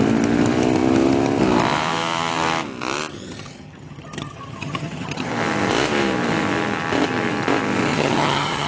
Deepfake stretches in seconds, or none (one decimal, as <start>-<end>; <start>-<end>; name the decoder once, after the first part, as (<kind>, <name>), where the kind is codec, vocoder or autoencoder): 3.1-5.3 (vocoder, HiFi-GAN); 7.9-8.7